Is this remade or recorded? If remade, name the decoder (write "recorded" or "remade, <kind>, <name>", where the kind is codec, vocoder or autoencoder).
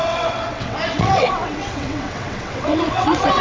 remade, vocoder, WaveNeXt